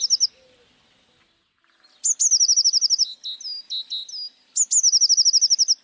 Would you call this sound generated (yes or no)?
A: no